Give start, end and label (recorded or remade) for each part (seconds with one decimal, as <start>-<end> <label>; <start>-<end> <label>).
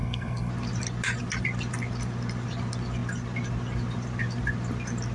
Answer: 0.0-0.5 remade; 0.5-5.1 recorded